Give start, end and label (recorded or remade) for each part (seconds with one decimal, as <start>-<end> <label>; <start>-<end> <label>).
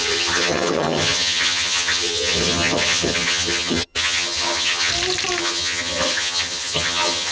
0.0-4.9 remade; 4.9-5.4 recorded; 5.4-7.3 remade